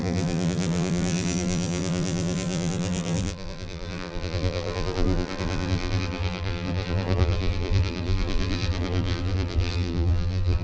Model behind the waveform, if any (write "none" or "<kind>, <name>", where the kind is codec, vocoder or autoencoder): vocoder, BigVGAN v2